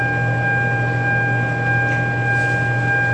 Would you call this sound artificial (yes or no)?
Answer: no